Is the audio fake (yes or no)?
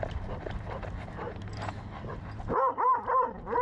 no